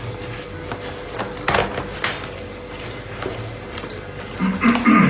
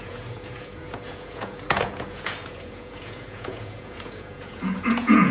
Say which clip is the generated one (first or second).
second